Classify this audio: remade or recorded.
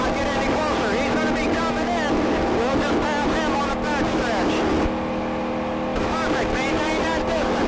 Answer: recorded